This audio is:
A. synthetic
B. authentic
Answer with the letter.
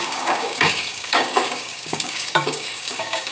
A